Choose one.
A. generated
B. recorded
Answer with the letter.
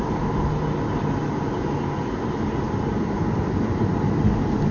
B